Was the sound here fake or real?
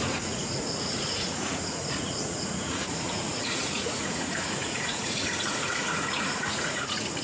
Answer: fake